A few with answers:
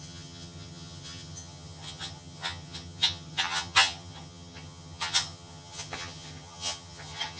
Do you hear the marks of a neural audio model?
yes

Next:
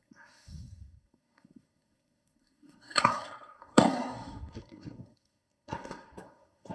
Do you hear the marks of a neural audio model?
yes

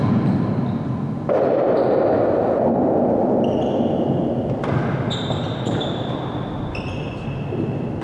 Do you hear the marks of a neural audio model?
no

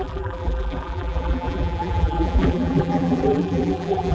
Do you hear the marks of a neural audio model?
yes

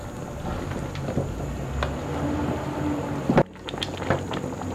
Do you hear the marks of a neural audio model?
no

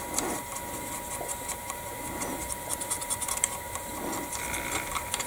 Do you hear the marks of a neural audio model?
yes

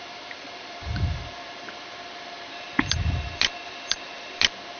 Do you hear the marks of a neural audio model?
yes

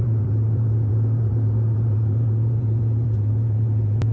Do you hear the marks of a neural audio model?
yes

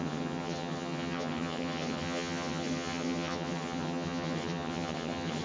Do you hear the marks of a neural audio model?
yes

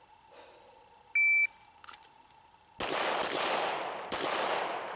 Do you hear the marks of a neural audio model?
no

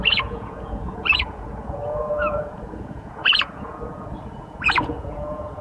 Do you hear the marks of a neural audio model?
yes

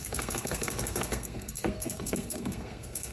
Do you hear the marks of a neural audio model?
yes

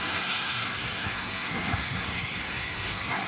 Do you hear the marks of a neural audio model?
yes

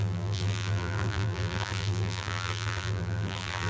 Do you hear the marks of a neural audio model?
yes